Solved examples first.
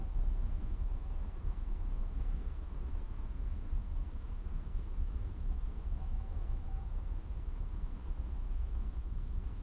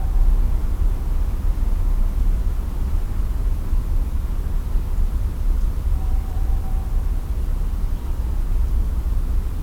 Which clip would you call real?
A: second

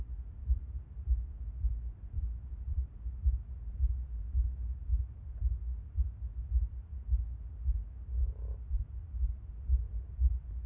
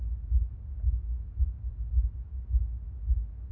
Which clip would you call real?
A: second